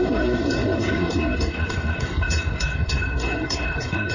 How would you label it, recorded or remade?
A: remade